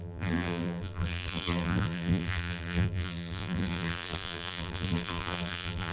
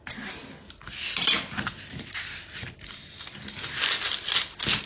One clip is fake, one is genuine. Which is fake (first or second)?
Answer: first